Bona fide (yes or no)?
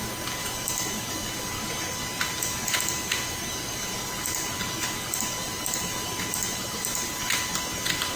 yes